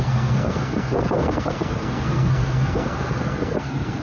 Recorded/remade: remade